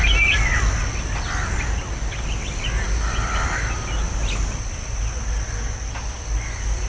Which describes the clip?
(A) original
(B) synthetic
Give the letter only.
A